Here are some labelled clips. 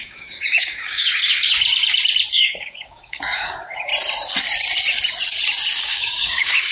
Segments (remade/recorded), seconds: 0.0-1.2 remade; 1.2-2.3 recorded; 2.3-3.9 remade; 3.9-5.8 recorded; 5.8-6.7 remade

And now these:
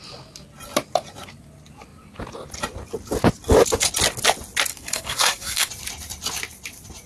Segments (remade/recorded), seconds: 0.0-4.7 recorded; 4.7-5.7 remade; 5.7-7.1 recorded

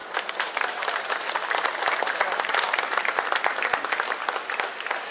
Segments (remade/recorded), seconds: 0.0-5.1 recorded